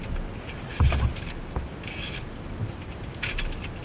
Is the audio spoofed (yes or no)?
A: no